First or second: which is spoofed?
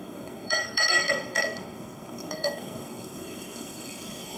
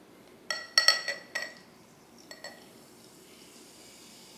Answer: first